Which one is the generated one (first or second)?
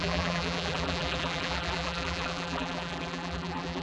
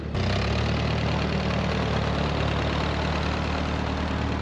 first